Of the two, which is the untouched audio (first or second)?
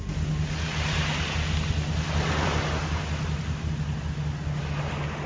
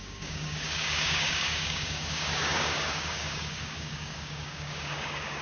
first